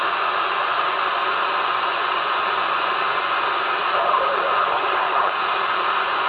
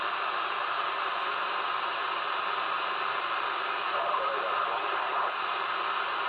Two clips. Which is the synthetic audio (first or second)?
first